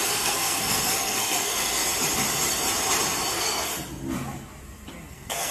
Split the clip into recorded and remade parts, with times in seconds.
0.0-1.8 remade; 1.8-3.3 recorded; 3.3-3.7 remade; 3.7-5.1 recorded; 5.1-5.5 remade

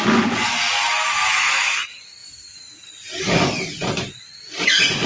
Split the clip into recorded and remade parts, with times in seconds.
0.0-0.8 recorded; 0.8-1.8 remade; 1.8-5.1 recorded

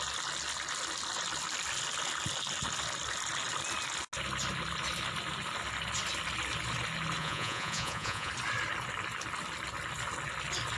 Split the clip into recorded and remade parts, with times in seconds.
0.0-7.2 recorded; 7.2-8.3 remade; 8.3-10.8 recorded

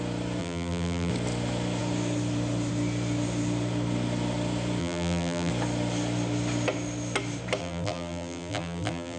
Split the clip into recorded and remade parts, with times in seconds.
0.0-0.4 recorded; 0.4-1.1 remade; 1.1-4.8 recorded; 4.8-5.5 remade; 5.5-7.6 recorded; 7.6-9.2 remade

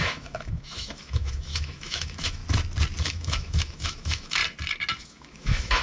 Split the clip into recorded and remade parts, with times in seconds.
0.0-2.4 remade; 2.4-3.0 recorded; 3.0-4.4 remade; 4.4-5.0 recorded; 5.0-5.8 remade

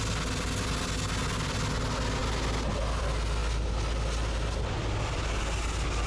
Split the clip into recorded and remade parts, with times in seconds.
0.0-6.1 recorded

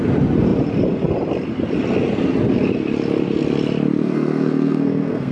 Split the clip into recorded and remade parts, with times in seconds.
0.0-4.0 recorded; 4.0-5.3 remade